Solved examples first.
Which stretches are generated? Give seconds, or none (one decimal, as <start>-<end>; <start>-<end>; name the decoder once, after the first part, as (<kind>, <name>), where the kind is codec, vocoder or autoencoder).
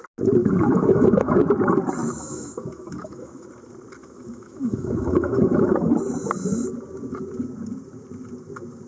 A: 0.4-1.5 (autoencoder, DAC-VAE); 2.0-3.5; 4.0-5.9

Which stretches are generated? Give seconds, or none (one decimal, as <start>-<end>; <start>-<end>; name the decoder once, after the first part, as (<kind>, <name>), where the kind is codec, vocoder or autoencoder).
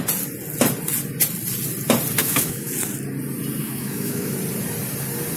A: 2.2-2.7 (autoencoder, DAC-VAE); 3.6-4.3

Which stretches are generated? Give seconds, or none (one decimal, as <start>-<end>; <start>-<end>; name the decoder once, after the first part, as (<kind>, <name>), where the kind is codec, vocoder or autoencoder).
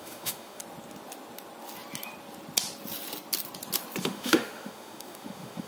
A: 0.0-0.6 (autoencoder, DAC-VAE); 4.0-5.7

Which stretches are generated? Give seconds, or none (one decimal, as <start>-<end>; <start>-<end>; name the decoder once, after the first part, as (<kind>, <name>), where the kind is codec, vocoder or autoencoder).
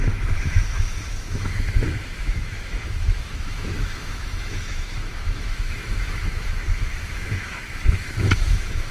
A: 0.0-8.9 (autoencoder, DAC-VAE)